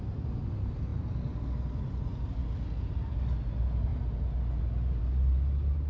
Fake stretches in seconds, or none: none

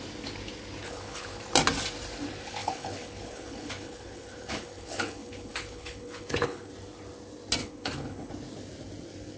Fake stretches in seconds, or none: 0.8-1.4 (codec, HILCodec); 2.6-6.7; 7.6-8.3

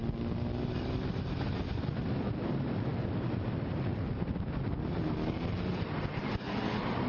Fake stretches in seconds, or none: none

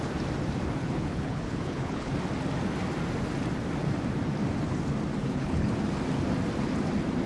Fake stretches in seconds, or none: 0.8-2.1 (codec, HILCodec); 5.2-5.7

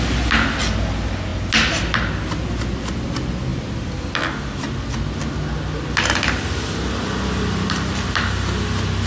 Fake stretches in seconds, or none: none